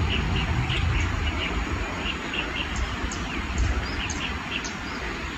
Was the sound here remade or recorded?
recorded